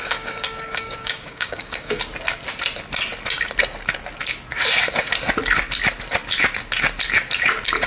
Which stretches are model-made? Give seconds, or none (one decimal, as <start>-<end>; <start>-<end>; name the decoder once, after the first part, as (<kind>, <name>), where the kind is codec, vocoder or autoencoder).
0.0-2.0 (codec, DAC)